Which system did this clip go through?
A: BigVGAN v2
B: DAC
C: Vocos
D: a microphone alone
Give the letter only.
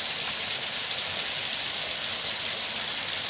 D